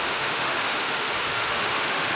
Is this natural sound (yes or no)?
no